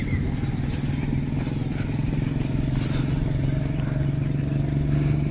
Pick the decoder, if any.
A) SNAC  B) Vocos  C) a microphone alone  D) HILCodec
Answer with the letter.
C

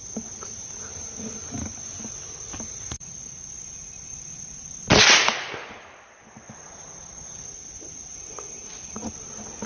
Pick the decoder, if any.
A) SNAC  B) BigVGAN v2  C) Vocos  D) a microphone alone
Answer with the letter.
D